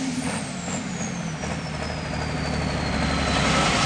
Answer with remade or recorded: recorded